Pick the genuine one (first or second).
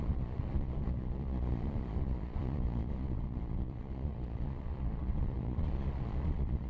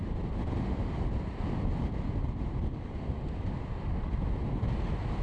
second